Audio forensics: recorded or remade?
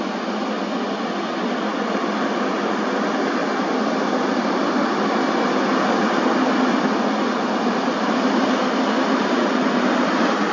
recorded